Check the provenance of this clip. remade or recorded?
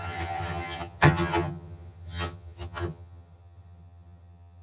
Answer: remade